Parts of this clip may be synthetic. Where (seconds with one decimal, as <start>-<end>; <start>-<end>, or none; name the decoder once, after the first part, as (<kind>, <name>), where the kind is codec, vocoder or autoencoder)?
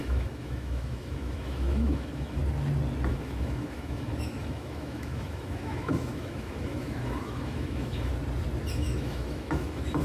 0.0-2.4 (autoencoder, DAC-VAE); 3.1-8.1; 8.7-10.0